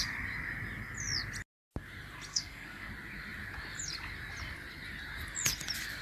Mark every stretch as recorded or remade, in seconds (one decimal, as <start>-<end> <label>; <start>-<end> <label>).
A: 0.0-2.3 recorded; 2.3-2.9 remade; 2.9-6.0 recorded